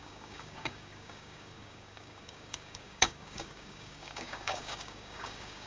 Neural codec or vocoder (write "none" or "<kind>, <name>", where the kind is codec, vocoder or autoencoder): codec, DAC